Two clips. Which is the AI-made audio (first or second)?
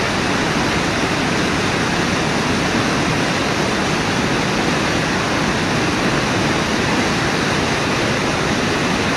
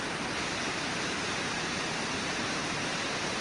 second